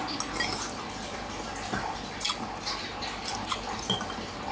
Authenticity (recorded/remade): recorded